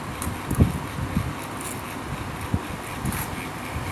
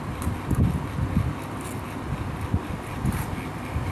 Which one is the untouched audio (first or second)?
first